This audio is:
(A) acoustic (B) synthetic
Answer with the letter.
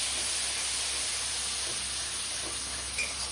A